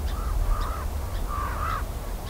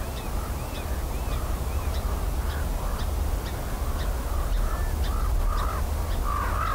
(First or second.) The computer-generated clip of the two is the first